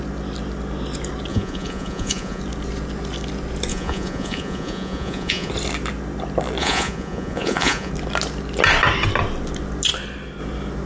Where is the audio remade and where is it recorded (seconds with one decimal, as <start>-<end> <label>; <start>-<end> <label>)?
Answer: 0.0-1.3 recorded; 1.3-2.4 remade; 2.4-3.7 recorded; 3.7-5.5 remade; 5.5-6.6 recorded; 6.6-7.9 remade; 7.9-10.9 recorded